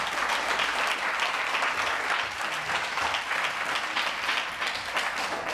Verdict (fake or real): real